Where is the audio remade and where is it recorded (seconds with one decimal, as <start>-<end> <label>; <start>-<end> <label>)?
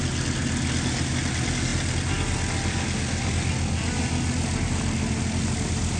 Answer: 0.0-6.0 recorded